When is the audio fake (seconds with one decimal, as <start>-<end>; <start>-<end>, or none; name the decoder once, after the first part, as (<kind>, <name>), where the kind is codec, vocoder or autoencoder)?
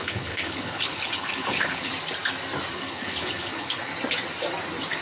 0.0-1.9 (codec, HILCodec); 2.7-3.9